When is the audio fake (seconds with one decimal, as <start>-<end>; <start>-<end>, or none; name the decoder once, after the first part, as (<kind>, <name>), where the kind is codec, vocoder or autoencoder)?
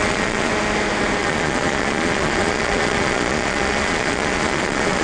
0.0-0.5 (vocoder, Vocos); 1.2-5.0